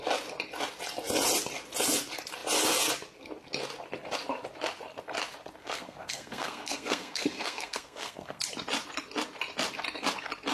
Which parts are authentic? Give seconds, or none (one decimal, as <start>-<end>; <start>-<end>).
0.0-5.6; 8.4-10.5